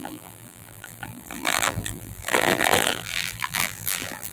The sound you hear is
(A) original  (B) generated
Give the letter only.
B